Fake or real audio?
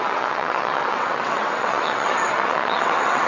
fake